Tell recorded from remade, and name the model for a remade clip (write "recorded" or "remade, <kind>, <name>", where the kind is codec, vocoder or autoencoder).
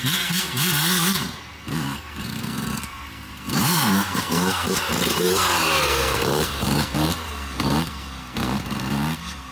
remade, codec, SNAC